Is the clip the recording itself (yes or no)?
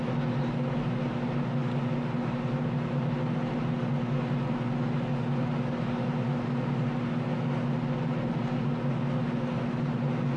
yes